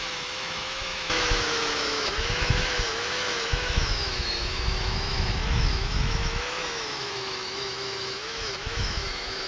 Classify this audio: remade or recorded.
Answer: remade